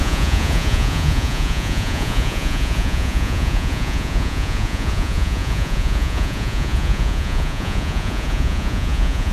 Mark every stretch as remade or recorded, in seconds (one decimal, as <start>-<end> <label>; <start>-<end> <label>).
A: 0.0-9.3 remade